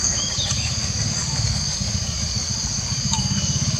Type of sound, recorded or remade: remade